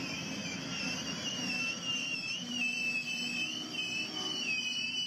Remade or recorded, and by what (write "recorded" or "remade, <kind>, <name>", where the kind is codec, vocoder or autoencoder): recorded